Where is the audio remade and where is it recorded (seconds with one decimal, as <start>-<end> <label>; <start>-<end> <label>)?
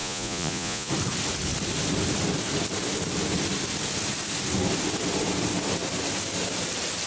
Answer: 0.0-0.9 remade; 0.9-7.1 recorded